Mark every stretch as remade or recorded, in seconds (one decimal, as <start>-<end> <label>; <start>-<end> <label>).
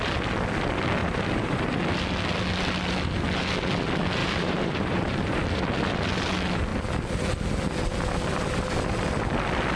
0.0-1.0 recorded; 1.0-1.8 remade; 1.8-4.2 recorded; 4.2-5.4 remade; 5.4-9.8 recorded